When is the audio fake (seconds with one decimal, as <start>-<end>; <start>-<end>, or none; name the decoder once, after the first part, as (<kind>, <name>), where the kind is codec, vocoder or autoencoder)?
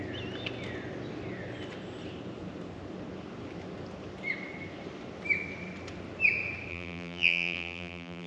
6.7-8.3 (vocoder, BigVGAN v2)